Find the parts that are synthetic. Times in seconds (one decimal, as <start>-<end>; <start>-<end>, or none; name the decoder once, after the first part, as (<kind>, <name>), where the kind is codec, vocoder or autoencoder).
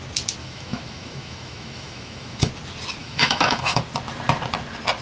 0.4-2.5 (autoencoder, DAC-VAE); 3.0-3.8